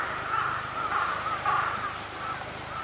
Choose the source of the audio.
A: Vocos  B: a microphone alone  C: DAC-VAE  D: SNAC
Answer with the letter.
B